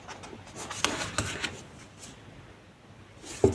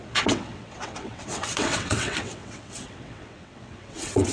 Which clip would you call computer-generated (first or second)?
second